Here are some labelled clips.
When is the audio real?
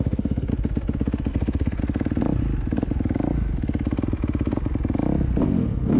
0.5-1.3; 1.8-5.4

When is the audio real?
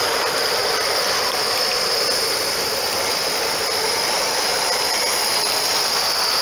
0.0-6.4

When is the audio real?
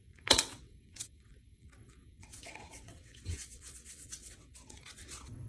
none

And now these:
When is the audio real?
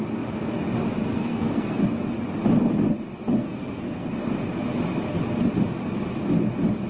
0.0-1.0; 1.8-3.4; 4.3-6.9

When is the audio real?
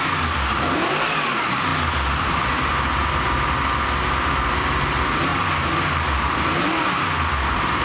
0.0-7.8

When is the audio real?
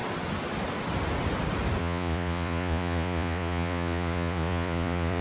0.0-1.8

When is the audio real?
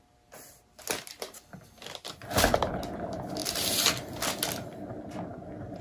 0.0-5.8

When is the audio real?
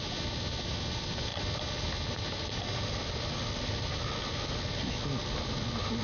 0.0-6.0